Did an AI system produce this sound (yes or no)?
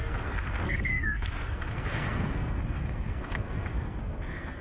yes